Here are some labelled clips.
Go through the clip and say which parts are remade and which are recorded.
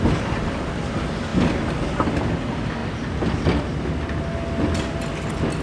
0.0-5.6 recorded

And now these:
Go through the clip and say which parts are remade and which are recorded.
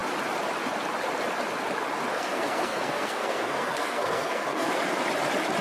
0.0-2.1 recorded; 2.1-4.8 remade; 4.8-5.6 recorded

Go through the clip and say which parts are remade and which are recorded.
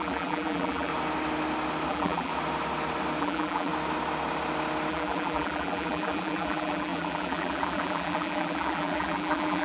0.0-0.9 remade; 0.9-1.9 recorded; 1.9-2.3 remade; 2.3-3.2 recorded; 3.2-3.7 remade; 3.7-4.9 recorded; 4.9-9.6 remade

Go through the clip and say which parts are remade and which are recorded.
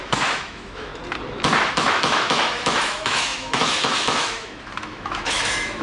0.0-0.9 remade; 0.9-1.7 recorded; 1.7-5.8 remade